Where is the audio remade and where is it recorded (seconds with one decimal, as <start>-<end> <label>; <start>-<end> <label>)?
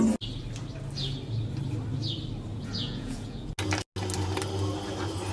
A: 0.0-2.5 recorded; 2.5-3.5 remade; 3.5-5.3 recorded